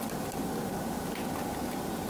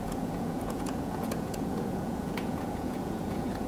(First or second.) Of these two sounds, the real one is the first